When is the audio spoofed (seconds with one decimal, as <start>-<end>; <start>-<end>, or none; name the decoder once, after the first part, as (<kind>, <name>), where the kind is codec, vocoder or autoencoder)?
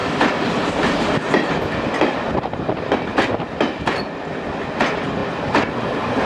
0.0-0.7 (vocoder, BigVGAN v2)